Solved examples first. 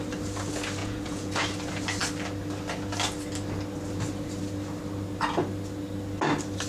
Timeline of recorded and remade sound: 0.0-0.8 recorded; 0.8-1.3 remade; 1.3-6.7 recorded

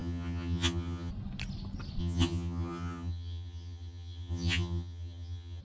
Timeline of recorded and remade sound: 0.0-1.1 remade; 1.1-2.0 recorded; 2.0-5.6 remade

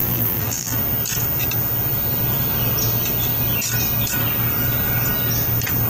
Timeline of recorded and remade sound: 0.0-0.8 remade; 0.8-5.9 recorded

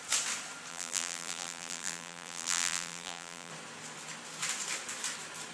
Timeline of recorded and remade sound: 0.0-0.7 recorded; 0.7-3.5 remade; 3.5-5.5 recorded